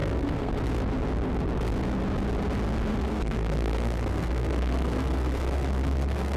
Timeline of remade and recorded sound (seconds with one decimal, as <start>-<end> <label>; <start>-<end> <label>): 0.0-0.5 remade; 0.5-2.9 recorded; 2.9-6.4 remade